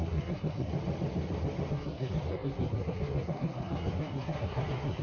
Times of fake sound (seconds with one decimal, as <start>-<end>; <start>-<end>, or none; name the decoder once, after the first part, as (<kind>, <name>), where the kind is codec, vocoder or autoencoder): 0.0-0.7 (codec, SNAC); 1.7-5.0